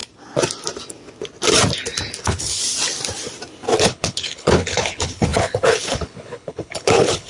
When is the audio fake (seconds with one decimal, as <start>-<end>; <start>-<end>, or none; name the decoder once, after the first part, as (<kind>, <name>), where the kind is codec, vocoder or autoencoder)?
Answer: 2.2-2.6 (codec, HILCodec); 3.8-7.3